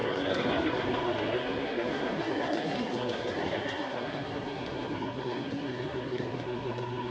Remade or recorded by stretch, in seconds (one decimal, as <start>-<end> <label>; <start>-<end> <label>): 0.0-7.1 remade